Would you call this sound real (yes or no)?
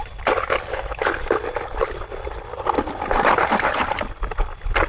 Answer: yes